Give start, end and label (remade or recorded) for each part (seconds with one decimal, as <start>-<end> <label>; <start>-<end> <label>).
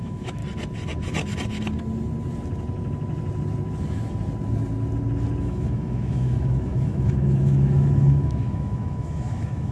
0.0-0.4 remade; 0.4-5.4 recorded; 5.4-9.7 remade